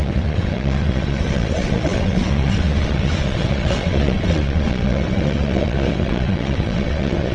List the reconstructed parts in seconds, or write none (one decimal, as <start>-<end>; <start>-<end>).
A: 0.0-7.3